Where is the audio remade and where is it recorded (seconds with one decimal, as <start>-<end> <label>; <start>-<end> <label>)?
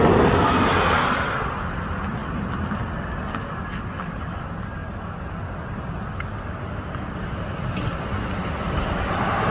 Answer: 0.0-9.5 recorded